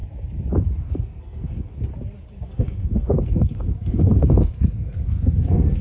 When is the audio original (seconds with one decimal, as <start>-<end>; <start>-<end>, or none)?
0.0-0.8; 1.9-2.5